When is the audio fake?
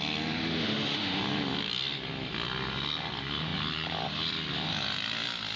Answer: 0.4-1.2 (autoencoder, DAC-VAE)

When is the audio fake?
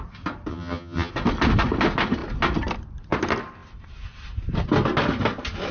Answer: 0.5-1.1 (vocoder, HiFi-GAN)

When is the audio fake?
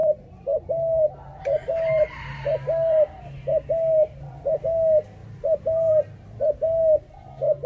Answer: 0.0-4.6 (vocoder, BigVGAN v2); 5.2-7.7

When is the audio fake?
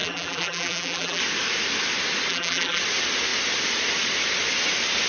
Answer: 0.0-1.2 (vocoder, BigVGAN v2); 2.3-2.8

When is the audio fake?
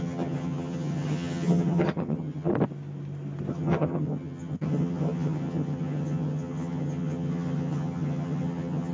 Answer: 0.0-2.5 (vocoder, HiFi-GAN); 3.5-8.9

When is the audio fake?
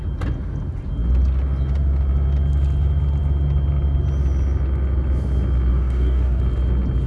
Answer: 5.7-6.4 (codec, DAC)